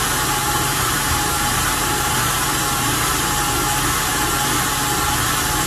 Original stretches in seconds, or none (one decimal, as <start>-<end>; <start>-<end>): 0.0-0.4; 2.4-5.7

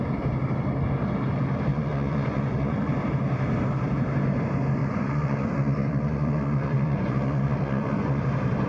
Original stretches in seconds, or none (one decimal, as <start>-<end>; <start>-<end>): 0.0-1.7; 2.9-4.8; 8.2-8.7

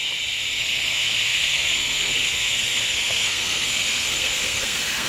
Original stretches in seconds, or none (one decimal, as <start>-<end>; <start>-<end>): 0.0-0.6

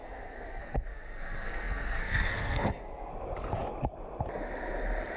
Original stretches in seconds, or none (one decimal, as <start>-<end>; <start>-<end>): 3.1-5.2

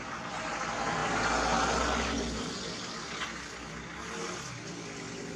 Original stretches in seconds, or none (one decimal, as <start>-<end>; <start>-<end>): 0.0-5.4

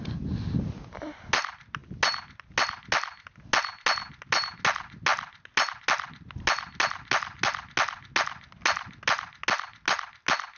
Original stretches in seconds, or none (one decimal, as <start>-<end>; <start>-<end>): 0.0-10.6

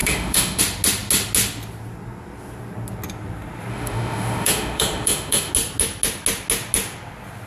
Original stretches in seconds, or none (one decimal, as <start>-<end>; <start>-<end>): 0.6-3.7; 5.5-7.5